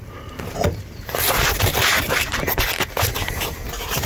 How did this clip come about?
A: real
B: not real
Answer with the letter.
B